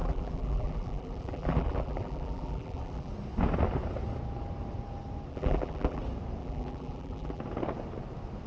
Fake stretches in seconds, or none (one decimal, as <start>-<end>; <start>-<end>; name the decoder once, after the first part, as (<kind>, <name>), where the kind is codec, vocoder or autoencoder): 0.0-3.1 (vocoder, BigVGAN v2); 5.3-6.0; 6.4-7.4